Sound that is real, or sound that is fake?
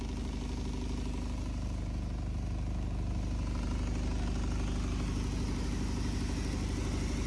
real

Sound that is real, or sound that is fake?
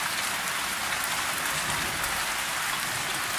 real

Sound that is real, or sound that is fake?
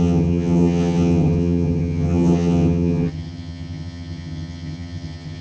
fake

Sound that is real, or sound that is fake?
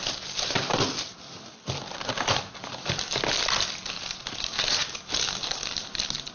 real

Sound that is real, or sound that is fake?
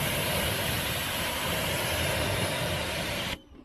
fake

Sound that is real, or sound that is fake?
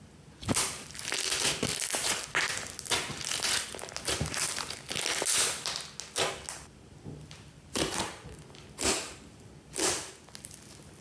real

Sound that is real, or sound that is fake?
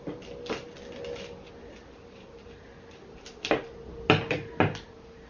real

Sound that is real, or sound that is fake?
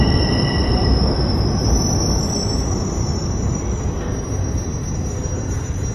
real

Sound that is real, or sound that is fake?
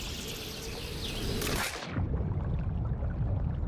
real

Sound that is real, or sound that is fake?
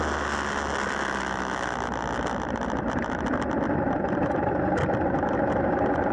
real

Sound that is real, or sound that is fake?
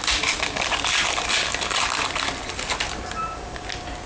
real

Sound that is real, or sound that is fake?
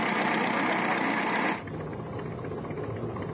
real